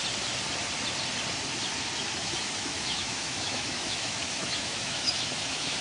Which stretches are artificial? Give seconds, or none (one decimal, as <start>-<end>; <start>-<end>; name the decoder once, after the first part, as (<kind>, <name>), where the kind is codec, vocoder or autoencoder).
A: 2.2-5.8 (autoencoder, DAC-VAE)